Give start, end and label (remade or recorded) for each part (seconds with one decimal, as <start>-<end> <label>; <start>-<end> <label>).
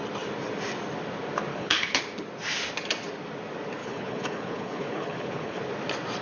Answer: 0.0-1.5 recorded; 1.5-2.0 remade; 2.0-3.8 recorded; 3.8-5.6 remade; 5.6-6.2 recorded